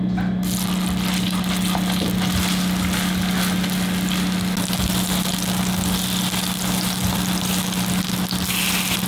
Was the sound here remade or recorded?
recorded